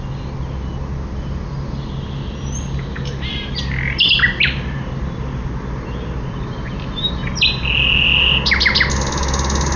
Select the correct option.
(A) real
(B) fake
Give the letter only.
A